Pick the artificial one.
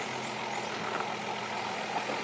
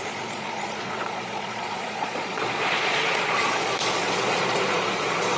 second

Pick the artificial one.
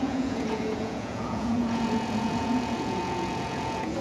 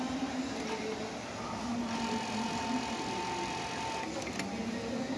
first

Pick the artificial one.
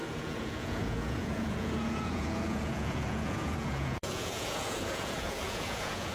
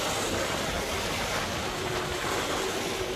first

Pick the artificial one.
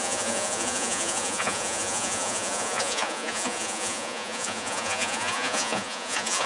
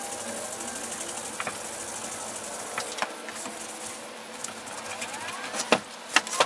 first